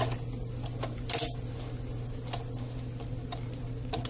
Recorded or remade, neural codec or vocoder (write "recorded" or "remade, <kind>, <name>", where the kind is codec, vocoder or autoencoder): recorded